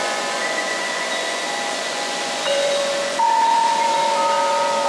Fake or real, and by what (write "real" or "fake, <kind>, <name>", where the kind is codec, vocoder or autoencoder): fake, vocoder, Vocos